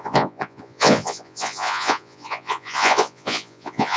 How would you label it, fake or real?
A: fake